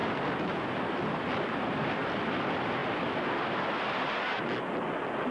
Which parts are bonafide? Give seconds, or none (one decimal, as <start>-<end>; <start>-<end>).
0.0-5.3